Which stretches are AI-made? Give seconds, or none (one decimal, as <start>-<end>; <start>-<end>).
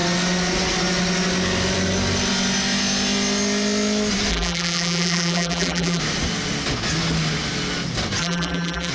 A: 4.3-6.0; 8.2-8.9